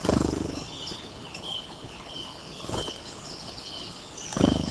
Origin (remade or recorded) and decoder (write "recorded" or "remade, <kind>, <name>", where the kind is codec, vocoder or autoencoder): remade, codec, HILCodec